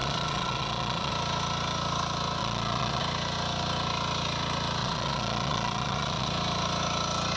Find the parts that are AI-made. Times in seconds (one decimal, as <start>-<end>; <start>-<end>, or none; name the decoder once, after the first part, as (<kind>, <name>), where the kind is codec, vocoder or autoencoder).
0.0-1.1 (vocoder, Vocos); 2.4-3.0; 4.8-6.3